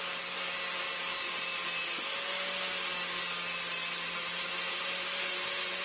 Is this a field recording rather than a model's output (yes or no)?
yes